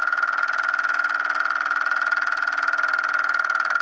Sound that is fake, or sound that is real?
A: real